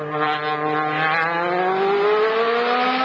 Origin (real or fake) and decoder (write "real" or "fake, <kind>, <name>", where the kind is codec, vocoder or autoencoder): real